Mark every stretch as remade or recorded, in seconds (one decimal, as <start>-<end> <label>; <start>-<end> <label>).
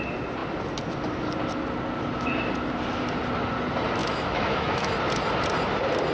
0.0-4.0 recorded; 4.0-4.9 remade; 4.9-6.1 recorded